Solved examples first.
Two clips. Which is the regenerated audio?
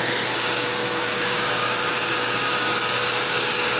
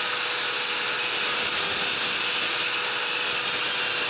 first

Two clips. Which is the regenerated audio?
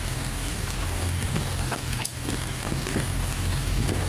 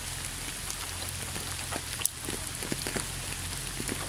first